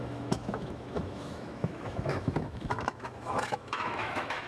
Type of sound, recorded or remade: remade